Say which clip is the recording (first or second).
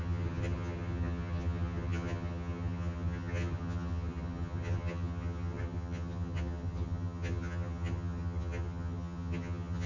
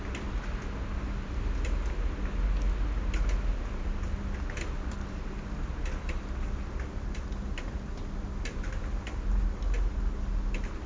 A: second